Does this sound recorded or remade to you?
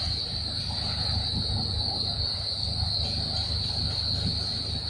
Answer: recorded